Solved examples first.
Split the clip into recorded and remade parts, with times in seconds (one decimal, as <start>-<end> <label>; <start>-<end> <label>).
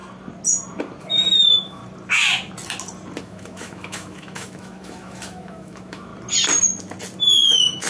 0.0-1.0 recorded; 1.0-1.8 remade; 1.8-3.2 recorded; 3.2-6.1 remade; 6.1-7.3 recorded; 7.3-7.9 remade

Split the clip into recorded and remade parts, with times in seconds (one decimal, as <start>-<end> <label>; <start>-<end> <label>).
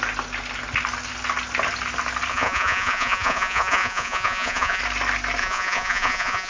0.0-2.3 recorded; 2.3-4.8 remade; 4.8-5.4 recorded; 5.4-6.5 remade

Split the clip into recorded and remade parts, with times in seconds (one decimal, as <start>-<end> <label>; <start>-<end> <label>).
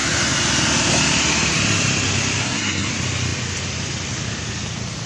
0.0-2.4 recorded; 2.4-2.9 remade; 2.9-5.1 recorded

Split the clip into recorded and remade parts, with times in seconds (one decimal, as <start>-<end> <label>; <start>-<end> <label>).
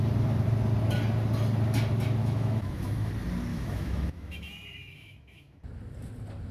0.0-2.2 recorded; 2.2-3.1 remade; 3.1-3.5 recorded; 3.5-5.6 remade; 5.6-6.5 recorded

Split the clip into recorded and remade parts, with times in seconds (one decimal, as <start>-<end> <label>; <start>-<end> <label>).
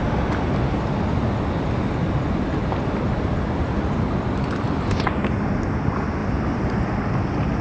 0.0-6.2 recorded; 6.2-7.0 remade; 7.0-7.6 recorded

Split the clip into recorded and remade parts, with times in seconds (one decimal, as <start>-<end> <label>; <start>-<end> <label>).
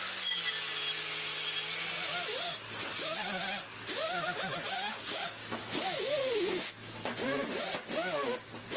0.0-5.4 recorded; 5.4-6.2 remade; 6.2-8.8 recorded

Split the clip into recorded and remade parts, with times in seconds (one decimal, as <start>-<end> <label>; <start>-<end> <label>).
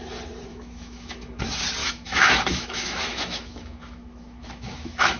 0.0-0.5 recorded; 0.5-1.4 remade; 1.4-1.8 recorded; 1.8-5.2 remade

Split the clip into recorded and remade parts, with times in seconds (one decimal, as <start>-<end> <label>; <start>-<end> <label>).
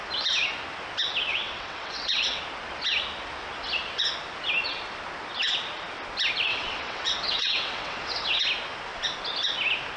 0.0-1.3 recorded; 1.3-2.4 remade; 2.4-6.5 recorded; 6.5-8.4 remade; 8.4-10.0 recorded